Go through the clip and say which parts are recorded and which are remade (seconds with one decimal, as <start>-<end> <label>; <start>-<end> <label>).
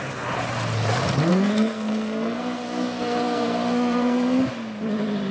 0.0-1.3 recorded; 1.3-4.4 remade; 4.4-5.3 recorded